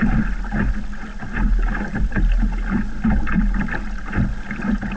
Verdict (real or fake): real